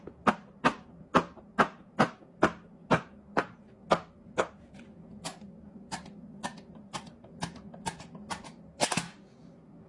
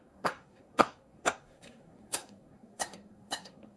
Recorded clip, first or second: first